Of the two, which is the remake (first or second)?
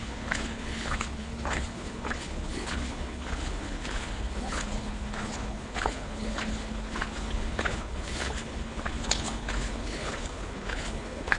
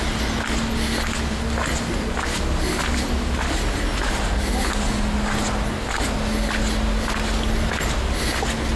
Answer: first